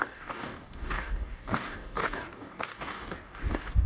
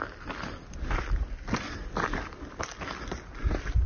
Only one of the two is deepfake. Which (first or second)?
first